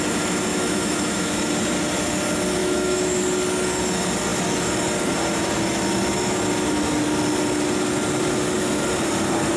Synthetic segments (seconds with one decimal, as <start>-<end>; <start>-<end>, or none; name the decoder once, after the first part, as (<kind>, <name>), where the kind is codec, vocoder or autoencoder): 0.5-1.5 (autoencoder, DAC-VAE); 2.6-3.2